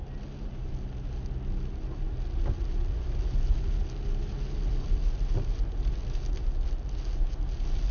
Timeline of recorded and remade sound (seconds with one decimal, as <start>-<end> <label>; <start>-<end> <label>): 0.0-7.9 recorded